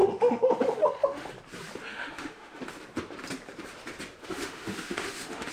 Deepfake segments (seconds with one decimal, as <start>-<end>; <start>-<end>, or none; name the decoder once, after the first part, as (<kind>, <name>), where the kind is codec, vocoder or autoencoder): 0.0-1.3 (autoencoder, DAC-VAE); 1.9-2.6; 4.2-5.5